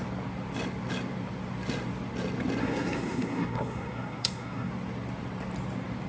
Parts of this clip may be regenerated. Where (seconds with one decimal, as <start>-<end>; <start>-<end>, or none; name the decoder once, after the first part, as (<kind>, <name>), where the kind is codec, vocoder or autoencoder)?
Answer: 2.6-4.7 (codec, SNAC)